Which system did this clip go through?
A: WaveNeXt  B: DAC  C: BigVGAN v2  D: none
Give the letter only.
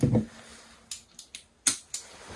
D